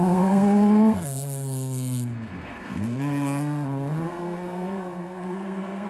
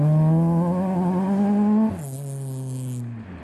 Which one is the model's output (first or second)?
first